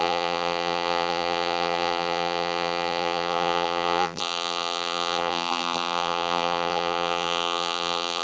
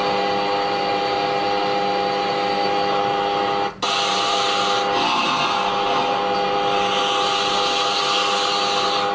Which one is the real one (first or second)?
second